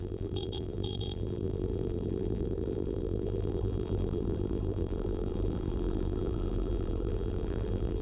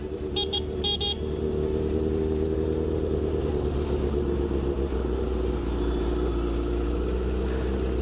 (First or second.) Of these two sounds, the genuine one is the second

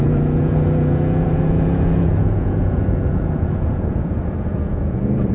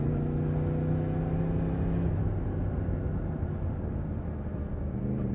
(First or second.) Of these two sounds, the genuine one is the second